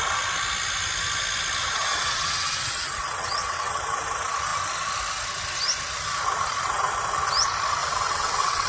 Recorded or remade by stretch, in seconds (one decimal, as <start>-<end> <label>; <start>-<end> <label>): 0.0-1.6 recorded; 1.6-3.8 remade; 3.8-7.8 recorded; 7.8-8.7 remade